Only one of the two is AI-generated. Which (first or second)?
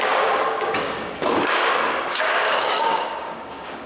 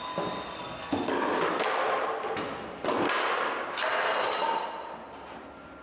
first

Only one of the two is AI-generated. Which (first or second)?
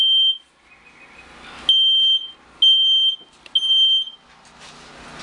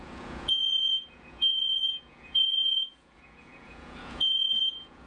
second